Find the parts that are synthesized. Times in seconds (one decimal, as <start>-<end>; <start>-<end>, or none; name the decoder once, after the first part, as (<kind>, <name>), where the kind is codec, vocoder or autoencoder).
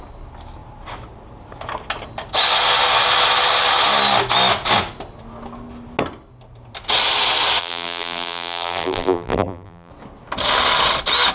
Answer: 7.6-9.9 (vocoder, BigVGAN v2)